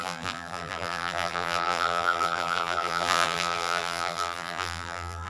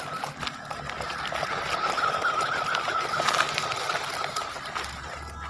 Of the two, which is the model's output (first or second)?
first